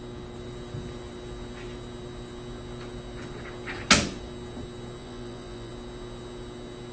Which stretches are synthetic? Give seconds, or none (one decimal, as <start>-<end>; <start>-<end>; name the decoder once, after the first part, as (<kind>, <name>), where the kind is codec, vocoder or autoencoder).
5.0-5.7 (vocoder, Vocos)

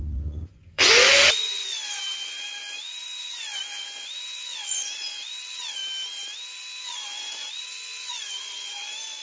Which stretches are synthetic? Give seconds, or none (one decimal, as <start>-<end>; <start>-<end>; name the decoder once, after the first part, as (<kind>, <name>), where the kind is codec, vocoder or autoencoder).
0.0-5.8 (vocoder, Vocos); 6.8-9.2

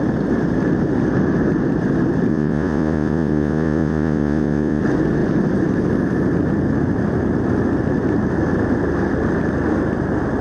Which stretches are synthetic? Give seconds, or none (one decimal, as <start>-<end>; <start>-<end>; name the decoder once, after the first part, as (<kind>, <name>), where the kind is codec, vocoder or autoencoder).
2.3-4.8 (vocoder, Vocos)

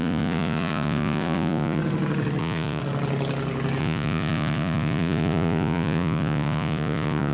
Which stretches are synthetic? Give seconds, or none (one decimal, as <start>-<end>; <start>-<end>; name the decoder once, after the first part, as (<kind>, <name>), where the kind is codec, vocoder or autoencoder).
0.0-1.8 (vocoder, Vocos); 2.4-2.8; 3.8-7.3